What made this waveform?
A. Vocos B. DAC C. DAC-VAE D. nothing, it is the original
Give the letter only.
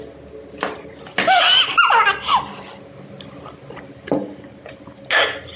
D